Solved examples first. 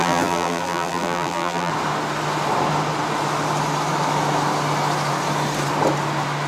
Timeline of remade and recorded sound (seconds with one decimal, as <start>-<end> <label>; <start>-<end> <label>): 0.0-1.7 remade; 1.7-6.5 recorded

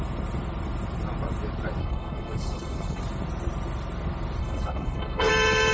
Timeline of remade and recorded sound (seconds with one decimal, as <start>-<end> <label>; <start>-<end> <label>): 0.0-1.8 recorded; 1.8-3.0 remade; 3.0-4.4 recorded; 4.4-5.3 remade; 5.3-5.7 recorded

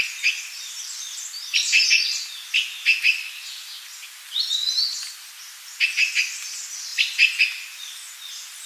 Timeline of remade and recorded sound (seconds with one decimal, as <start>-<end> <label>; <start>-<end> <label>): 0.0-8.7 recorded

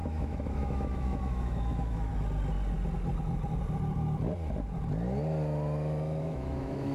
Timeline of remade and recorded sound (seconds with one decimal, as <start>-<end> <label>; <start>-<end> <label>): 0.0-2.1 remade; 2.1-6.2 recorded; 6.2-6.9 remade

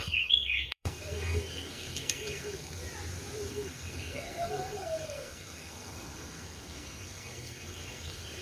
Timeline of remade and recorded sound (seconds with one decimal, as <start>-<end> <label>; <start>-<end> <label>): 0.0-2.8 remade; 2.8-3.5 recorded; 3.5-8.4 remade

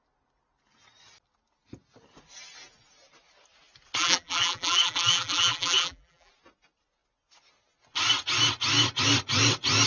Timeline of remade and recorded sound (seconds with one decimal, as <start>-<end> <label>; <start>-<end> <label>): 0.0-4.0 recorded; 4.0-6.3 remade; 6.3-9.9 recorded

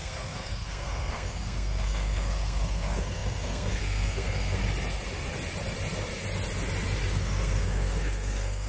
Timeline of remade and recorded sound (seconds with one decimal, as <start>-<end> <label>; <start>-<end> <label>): 0.0-4.6 remade; 4.6-7.1 recorded; 7.1-8.7 remade